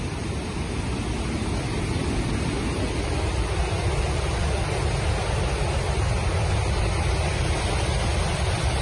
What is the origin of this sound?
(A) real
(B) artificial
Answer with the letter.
A